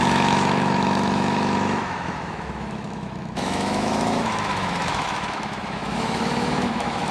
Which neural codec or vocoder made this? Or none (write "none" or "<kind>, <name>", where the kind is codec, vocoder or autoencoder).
autoencoder, DAC-VAE